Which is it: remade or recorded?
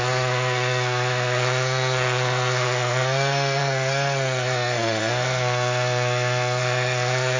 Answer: remade